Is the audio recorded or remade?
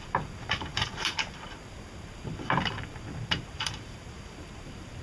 remade